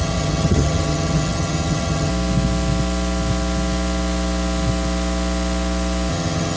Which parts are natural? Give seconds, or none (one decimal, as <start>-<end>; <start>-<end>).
2.1-6.1